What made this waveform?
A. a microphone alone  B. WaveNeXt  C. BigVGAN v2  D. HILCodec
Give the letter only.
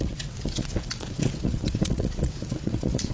B